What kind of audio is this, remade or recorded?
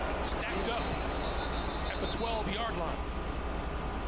recorded